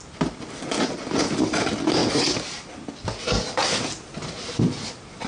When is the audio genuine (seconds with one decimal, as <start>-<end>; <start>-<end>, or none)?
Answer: 0.0-5.3